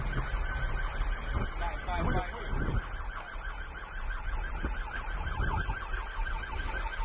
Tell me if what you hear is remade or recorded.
recorded